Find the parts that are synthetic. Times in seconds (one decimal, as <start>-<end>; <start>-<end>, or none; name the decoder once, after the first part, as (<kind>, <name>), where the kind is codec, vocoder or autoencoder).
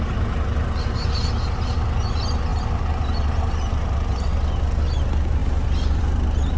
0.5-1.7 (vocoder, BigVGAN v2); 2.5-4.3